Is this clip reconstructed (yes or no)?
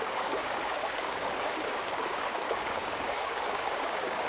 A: yes